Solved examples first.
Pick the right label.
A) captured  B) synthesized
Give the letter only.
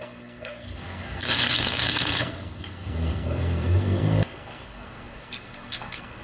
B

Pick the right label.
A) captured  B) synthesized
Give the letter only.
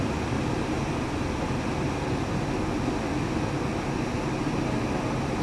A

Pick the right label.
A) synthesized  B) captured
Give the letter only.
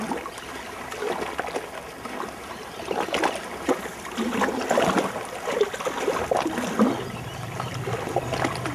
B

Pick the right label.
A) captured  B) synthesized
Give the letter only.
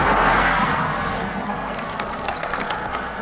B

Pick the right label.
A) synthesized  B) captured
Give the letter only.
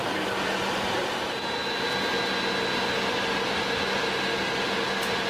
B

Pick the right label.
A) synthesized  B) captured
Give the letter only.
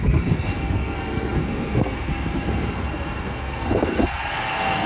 A